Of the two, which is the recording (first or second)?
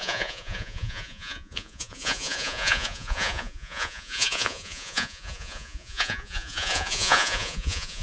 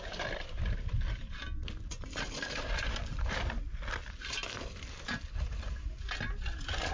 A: second